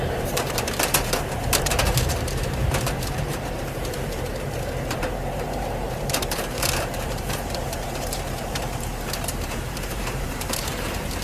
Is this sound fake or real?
fake